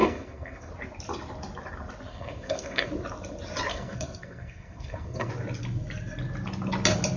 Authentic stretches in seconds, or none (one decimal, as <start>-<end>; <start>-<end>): 0.7-2.1; 2.9-3.7; 5.3-7.2